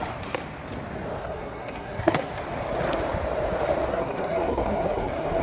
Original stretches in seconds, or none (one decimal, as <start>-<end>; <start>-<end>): 0.0-1.2; 2.3-3.9